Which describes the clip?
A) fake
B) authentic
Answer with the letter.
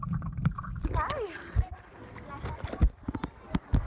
B